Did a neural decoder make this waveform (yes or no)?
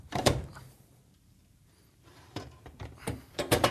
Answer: yes